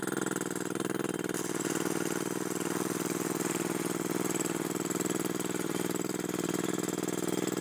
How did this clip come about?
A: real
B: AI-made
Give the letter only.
A